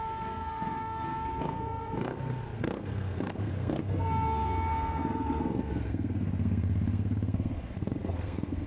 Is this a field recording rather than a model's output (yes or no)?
no